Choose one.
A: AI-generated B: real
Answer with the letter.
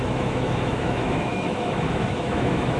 A